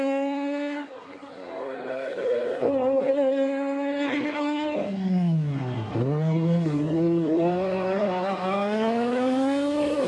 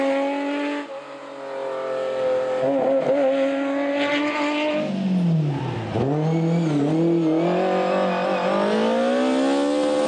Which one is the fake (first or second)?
first